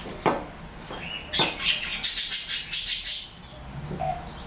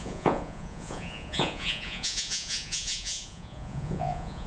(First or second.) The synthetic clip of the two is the second